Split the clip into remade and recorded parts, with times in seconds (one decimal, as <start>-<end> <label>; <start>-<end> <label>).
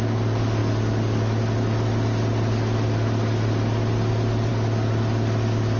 0.0-5.8 recorded